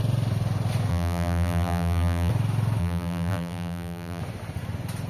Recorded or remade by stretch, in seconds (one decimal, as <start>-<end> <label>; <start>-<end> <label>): 0.0-0.9 recorded; 0.9-2.3 remade; 2.3-2.8 recorded; 2.8-4.2 remade; 4.2-5.1 recorded